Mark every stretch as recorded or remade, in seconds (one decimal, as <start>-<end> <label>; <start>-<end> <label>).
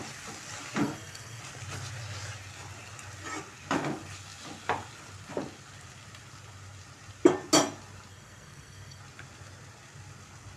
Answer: 0.0-0.8 recorded; 0.8-1.4 remade; 1.4-8.1 recorded; 8.1-9.0 remade; 9.0-10.6 recorded